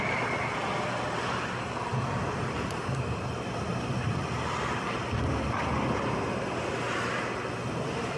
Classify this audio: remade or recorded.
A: recorded